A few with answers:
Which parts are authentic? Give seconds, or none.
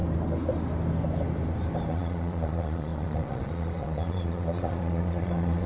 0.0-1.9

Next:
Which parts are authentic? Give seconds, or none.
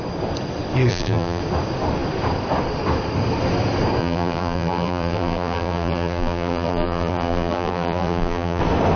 0.0-0.9; 1.4-4.0; 8.6-9.0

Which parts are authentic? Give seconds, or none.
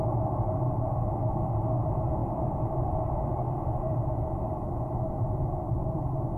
none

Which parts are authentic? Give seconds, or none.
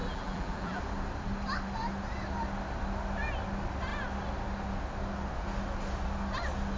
0.8-6.8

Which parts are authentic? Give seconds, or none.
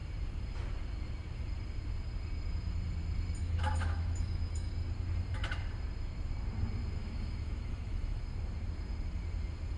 0.0-3.4; 4.7-7.0; 8.2-9.8